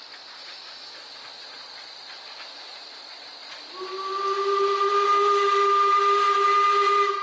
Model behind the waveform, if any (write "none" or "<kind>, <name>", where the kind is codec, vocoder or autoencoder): none